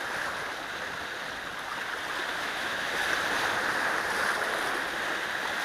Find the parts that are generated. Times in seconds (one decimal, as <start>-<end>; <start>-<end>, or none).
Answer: 2.3-2.9